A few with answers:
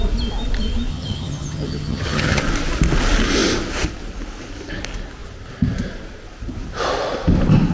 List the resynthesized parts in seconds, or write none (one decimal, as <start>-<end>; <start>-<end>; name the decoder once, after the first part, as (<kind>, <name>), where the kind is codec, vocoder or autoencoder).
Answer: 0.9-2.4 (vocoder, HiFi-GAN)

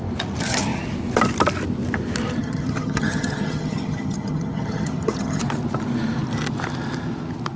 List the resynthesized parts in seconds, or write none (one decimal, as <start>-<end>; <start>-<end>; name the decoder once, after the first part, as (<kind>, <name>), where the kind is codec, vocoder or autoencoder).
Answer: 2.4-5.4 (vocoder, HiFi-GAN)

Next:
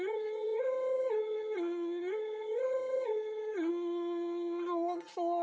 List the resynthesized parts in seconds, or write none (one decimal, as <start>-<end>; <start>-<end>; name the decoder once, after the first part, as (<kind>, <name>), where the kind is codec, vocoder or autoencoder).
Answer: 0.0-5.4 (vocoder, HiFi-GAN)

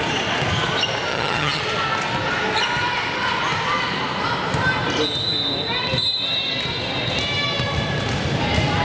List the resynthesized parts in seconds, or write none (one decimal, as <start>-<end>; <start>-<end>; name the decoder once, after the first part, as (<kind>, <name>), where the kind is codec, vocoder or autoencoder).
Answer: 1.1-1.6 (vocoder, HiFi-GAN)